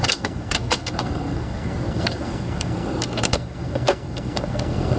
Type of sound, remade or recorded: remade